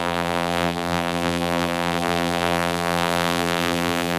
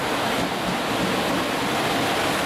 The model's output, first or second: first